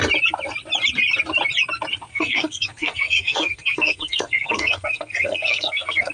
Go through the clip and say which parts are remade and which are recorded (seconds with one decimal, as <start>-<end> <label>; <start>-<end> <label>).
0.0-2.1 recorded; 2.1-6.1 remade